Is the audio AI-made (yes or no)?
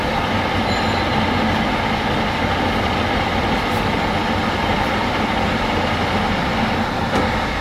no